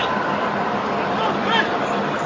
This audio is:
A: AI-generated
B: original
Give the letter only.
B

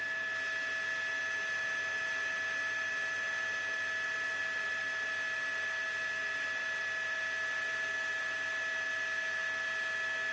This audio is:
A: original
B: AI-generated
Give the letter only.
A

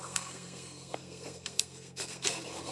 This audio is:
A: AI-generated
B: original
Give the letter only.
A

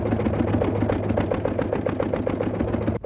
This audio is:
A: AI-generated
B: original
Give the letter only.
B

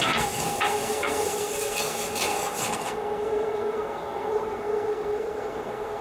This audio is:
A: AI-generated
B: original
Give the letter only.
A